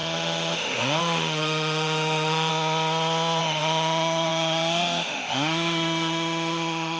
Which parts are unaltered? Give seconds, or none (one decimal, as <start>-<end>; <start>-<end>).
2.5-3.4